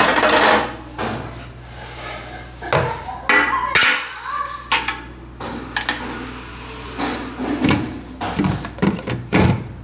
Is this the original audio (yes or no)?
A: yes